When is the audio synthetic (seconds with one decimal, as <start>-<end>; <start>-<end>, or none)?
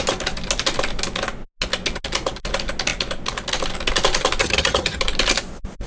4.4-5.0